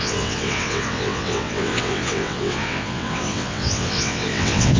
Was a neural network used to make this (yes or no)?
yes